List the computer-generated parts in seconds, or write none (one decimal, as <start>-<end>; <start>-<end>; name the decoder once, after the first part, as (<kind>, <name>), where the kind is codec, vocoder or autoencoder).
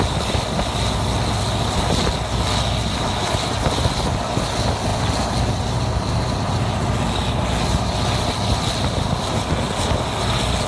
none